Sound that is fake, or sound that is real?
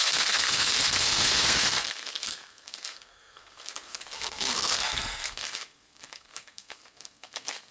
fake